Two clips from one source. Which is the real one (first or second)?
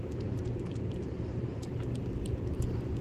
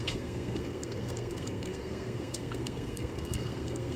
first